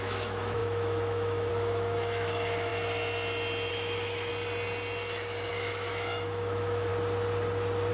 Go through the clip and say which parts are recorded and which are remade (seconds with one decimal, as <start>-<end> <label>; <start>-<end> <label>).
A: 0.0-2.7 remade; 2.7-3.7 recorded; 3.7-4.3 remade; 4.3-5.5 recorded; 5.5-6.9 remade; 6.9-7.9 recorded